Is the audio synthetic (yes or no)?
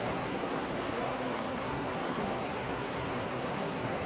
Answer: yes